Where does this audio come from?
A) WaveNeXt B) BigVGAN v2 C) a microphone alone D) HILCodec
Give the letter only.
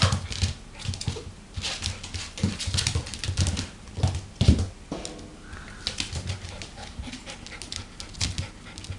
C